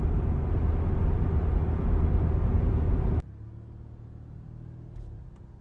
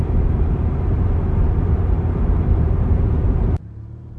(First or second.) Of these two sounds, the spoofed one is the second